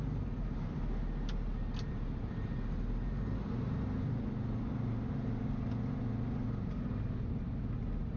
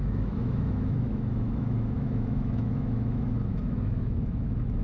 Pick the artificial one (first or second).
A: second